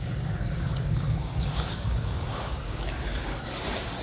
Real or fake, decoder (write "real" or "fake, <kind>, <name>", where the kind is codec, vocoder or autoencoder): fake, codec, DAC